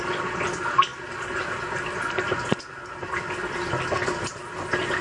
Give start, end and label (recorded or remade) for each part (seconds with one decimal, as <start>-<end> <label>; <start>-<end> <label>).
0.0-5.0 recorded